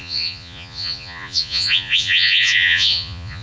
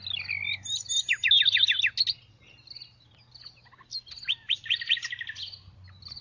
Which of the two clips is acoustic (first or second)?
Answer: second